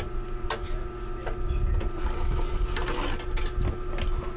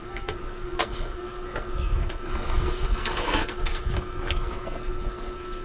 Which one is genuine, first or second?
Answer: first